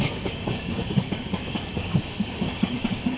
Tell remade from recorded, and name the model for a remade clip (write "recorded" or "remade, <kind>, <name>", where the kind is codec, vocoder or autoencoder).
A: remade, codec, DAC